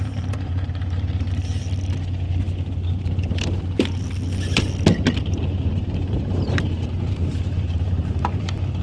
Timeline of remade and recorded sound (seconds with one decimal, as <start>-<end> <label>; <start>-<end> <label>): 0.0-1.4 remade; 1.4-5.4 recorded; 5.4-8.8 remade

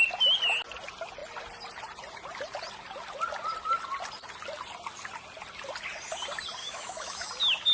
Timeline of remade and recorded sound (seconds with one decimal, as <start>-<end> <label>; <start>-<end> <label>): 0.0-6.6 recorded; 6.6-7.3 remade; 7.3-7.7 recorded

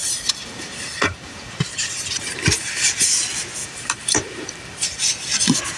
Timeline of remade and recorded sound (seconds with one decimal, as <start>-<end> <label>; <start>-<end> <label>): 0.0-3.1 remade; 3.1-3.6 recorded; 3.6-5.0 remade; 5.0-5.8 recorded